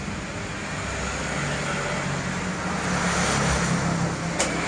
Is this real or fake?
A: real